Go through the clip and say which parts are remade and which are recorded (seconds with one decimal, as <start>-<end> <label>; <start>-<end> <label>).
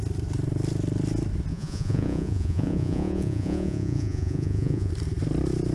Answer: 0.0-1.5 recorded; 1.5-4.9 remade; 4.9-5.7 recorded